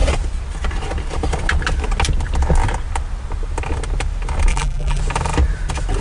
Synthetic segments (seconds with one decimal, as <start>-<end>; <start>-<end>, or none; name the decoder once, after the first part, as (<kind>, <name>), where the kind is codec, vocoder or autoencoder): 4.5-5.0 (vocoder, BigVGAN v2)